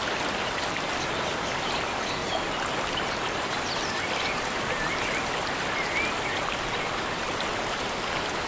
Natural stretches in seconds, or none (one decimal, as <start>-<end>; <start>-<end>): 0.0-8.5